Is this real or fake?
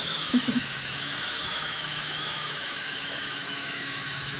fake